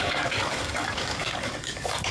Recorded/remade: remade